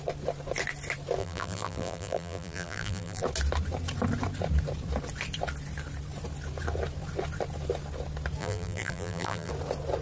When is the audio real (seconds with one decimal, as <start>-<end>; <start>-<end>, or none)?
0.0-1.2; 3.2-8.4; 9.5-10.0